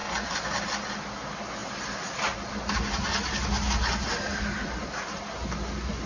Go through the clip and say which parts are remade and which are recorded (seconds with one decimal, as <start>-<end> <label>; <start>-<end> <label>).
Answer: 0.0-6.1 recorded